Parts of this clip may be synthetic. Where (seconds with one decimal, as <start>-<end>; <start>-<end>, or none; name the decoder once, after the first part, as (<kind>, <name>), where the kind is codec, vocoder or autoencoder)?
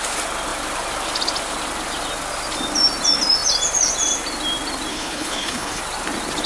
4.9-5.8 (codec, HILCodec)